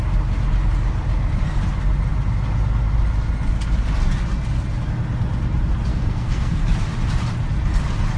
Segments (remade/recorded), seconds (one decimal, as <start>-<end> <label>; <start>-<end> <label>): 0.0-5.9 recorded; 5.9-6.6 remade; 6.6-8.2 recorded